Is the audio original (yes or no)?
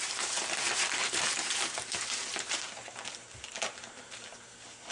no